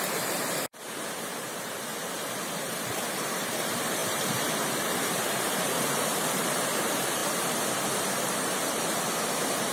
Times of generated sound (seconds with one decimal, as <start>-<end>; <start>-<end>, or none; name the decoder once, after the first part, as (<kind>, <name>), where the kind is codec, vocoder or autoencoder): 0.0-1.9 (vocoder, BigVGAN v2); 2.5-9.7